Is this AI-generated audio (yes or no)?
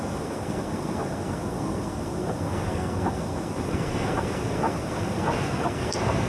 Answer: yes